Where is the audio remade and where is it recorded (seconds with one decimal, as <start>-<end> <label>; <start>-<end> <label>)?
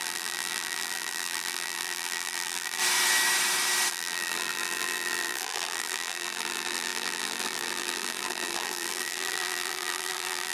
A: 0.0-2.8 remade; 2.8-3.9 recorded; 3.9-10.5 remade